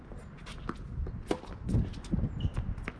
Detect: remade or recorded recorded